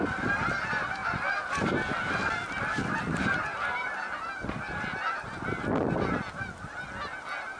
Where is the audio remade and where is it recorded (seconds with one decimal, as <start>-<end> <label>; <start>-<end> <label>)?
0.0-7.6 recorded

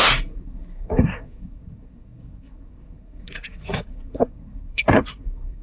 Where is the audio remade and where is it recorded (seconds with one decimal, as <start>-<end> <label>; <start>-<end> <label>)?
0.0-5.6 remade

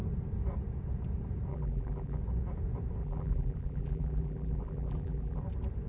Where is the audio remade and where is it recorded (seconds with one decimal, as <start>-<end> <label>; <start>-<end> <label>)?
0.0-1.5 recorded; 1.5-2.2 remade; 2.2-3.0 recorded; 3.0-5.4 remade; 5.4-5.9 recorded

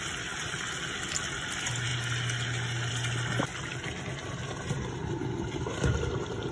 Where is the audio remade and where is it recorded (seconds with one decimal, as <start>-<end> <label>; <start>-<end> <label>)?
0.0-6.5 recorded

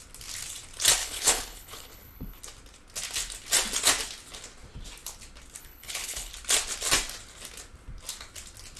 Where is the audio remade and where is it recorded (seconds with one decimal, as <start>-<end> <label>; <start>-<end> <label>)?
0.0-1.0 recorded; 1.0-2.4 remade; 2.4-5.6 recorded; 5.6-6.3 remade; 6.3-8.8 recorded

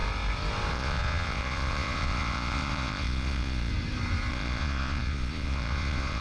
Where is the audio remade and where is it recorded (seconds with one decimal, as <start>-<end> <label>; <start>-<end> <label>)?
0.0-0.7 recorded; 0.7-3.7 remade; 3.7-4.3 recorded; 4.3-6.2 remade

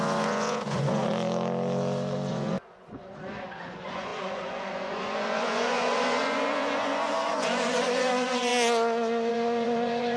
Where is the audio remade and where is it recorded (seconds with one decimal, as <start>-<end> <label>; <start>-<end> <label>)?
0.0-1.1 remade; 1.1-2.3 recorded; 2.3-8.5 remade; 8.5-9.3 recorded; 9.3-10.2 remade

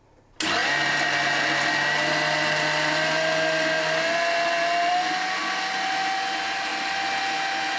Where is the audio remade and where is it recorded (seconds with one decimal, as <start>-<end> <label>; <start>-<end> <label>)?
0.0-7.8 recorded